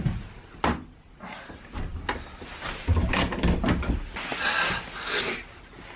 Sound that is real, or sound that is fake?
real